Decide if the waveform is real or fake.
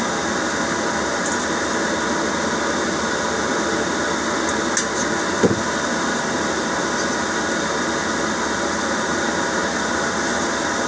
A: real